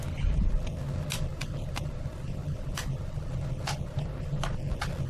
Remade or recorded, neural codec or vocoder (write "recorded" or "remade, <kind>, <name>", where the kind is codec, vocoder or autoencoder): recorded